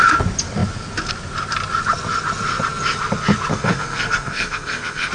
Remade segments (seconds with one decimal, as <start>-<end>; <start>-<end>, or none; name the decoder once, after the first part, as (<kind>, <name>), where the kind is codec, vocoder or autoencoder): 3.5-5.1 (codec, SNAC)